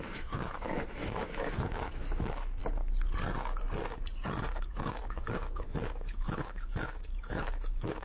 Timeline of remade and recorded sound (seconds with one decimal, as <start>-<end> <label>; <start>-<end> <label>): 0.0-2.6 remade; 2.6-4.7 recorded; 4.7-8.0 remade